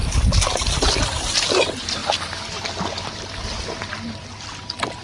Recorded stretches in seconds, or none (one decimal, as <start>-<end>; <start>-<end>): 0.0-5.0